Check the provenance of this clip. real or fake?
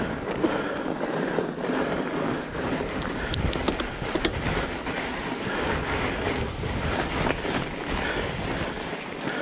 real